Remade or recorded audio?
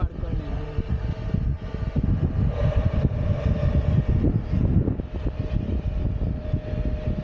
recorded